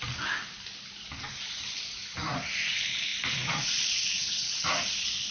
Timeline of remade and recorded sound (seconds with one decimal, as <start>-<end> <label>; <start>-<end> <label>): 0.0-5.3 recorded